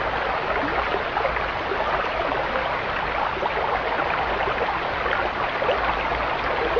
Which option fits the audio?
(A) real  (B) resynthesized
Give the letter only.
A